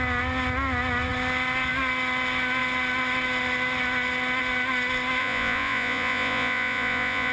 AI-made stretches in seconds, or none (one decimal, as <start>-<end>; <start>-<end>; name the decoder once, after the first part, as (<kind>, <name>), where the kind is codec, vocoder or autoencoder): 5.2-7.3 (vocoder, Vocos)